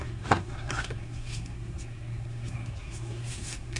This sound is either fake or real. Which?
fake